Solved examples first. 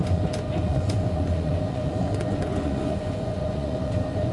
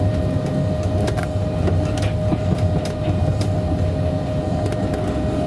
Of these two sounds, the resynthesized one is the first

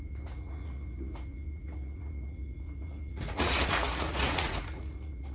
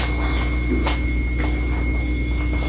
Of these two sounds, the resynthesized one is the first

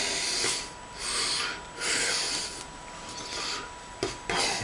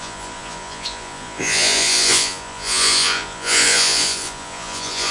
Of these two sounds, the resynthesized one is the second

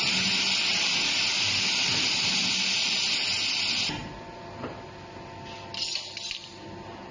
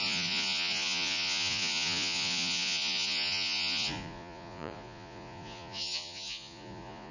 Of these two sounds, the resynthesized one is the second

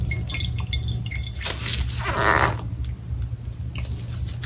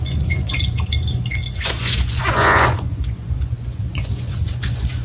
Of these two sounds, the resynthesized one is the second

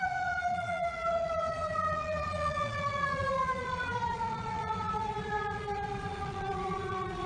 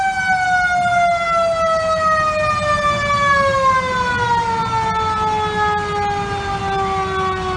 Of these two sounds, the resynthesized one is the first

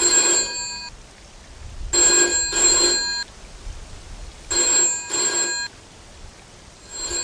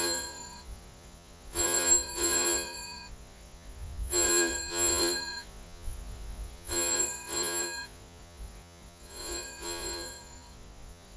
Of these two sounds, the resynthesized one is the second